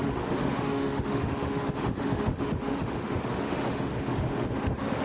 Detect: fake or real fake